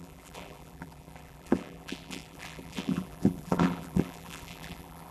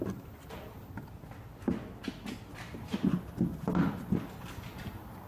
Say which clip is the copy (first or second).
first